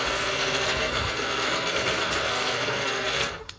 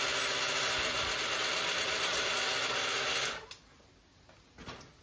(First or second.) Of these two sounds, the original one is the second